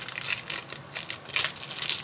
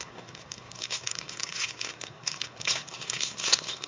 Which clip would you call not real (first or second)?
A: second